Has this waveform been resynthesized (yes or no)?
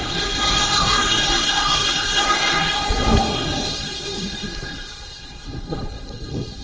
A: yes